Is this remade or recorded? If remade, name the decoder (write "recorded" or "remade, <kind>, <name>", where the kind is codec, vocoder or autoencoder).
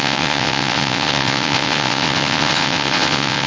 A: remade, vocoder, WaveNeXt